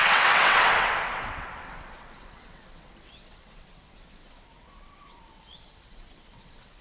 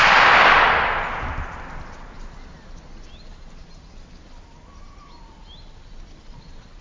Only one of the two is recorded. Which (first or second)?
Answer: second